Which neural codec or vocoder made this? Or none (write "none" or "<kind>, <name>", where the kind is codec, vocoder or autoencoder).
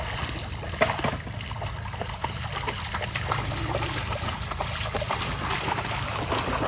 none